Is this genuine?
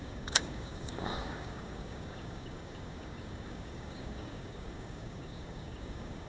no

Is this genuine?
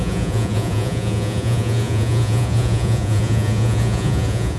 no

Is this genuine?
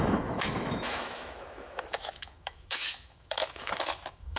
no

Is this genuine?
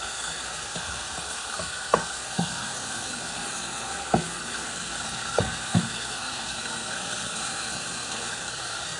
no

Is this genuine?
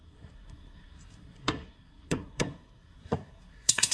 no